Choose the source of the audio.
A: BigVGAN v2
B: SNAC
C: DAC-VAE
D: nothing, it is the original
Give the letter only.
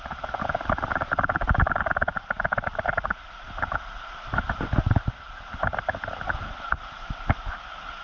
D